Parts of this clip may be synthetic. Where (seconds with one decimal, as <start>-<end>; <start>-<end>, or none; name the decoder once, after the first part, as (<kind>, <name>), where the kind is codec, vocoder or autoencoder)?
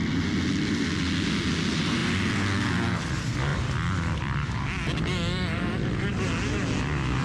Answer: 3.5-6.1 (vocoder, BigVGAN v2)